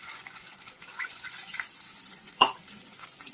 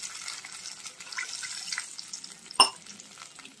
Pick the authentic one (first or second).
second